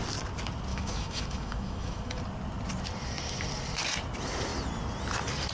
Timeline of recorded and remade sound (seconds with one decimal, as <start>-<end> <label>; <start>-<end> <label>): 0.0-0.7 recorded; 0.7-2.2 remade; 2.2-5.5 recorded